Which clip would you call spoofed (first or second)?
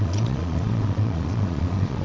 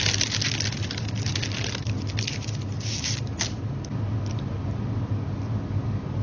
first